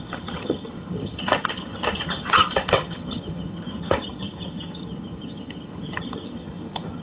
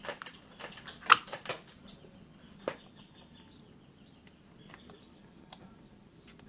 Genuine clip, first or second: second